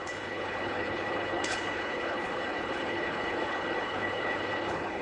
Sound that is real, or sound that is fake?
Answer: fake